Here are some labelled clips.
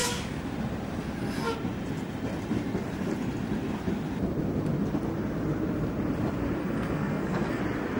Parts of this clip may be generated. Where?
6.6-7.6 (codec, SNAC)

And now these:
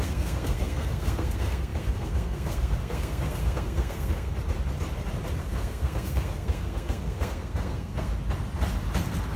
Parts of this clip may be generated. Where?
0.0-4.3 (codec, SNAC); 5.4-8.1

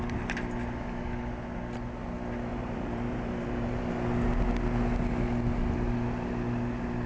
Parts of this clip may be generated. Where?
2.5-3.8 (vocoder, BigVGAN v2)

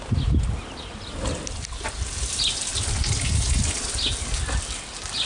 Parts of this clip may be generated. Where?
none

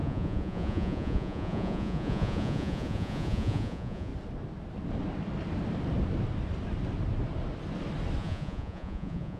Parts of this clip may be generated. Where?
0.0-4.1 (vocoder, Vocos); 8.2-9.4

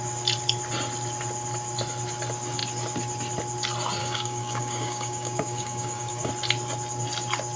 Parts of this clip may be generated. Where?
4.0-6.3 (codec, DAC)

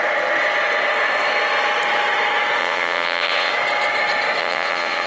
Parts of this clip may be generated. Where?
2.6-3.5 (vocoder, Vocos); 4.4-5.1

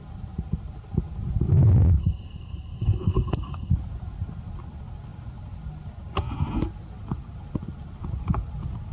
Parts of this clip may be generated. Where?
2.0-3.7 (codec, SNAC)